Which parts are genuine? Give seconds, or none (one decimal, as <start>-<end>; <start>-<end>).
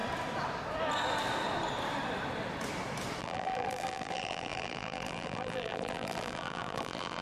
0.0-3.2